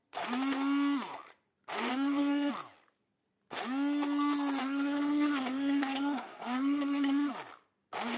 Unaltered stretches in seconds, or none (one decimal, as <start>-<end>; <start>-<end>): 0.0-1.9; 2.5-4.6; 7.3-8.2